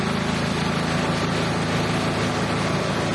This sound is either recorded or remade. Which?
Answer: recorded